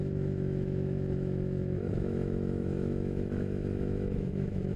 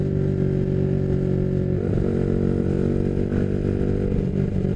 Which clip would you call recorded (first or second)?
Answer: second